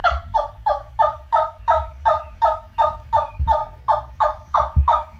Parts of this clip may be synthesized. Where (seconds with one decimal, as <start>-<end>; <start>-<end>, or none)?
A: 0.0-3.6; 4.1-5.2